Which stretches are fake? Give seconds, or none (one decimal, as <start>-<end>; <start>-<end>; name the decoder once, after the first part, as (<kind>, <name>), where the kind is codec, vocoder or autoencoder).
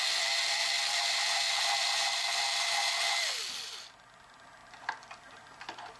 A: 0.6-2.9 (vocoder, BigVGAN v2); 4.6-6.0